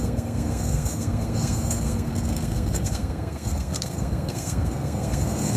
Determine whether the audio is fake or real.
fake